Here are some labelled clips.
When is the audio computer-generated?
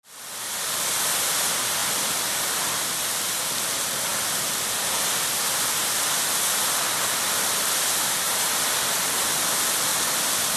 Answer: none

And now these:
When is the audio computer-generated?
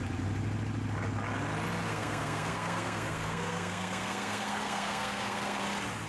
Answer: 1.9-5.6 (codec, SNAC)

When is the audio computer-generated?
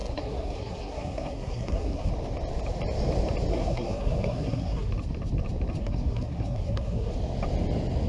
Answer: 0.0-2.1 (codec, SNAC); 3.5-4.9; 5.8-7.1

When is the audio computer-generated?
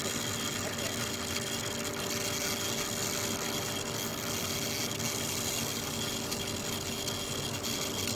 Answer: none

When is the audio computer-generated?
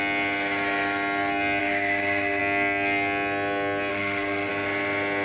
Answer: 1.6-2.4 (codec, SNAC); 3.9-4.5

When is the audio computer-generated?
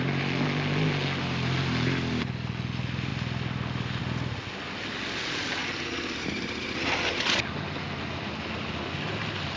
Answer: none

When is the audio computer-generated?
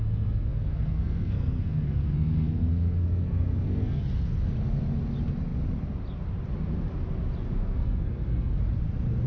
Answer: 0.0-4.0 (codec, SNAC); 7.6-8.6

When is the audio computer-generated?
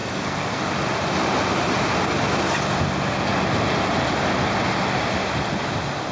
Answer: 0.0-0.6 (codec, SNAC)